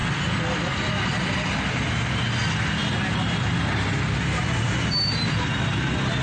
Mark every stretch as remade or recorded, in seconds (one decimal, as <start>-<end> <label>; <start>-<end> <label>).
0.0-6.2 recorded